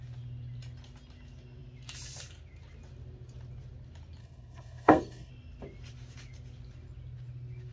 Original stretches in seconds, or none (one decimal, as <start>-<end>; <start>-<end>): 0.0-4.2; 5.3-7.7